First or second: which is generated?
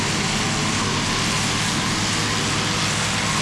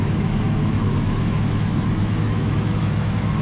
second